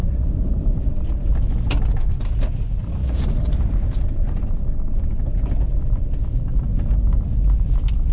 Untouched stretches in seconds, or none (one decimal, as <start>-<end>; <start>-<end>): 0.7-3.0; 4.6-6.7; 7.4-8.1